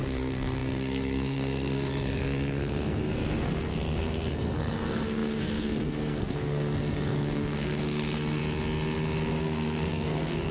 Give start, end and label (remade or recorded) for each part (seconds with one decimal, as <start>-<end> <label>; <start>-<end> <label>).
0.0-8.4 remade; 8.4-9.4 recorded; 9.4-10.5 remade